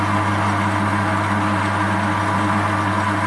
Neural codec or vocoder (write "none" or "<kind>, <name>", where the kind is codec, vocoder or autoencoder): none